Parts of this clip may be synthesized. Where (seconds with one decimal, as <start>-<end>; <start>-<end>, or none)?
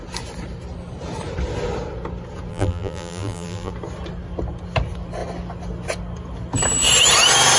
2.5-3.7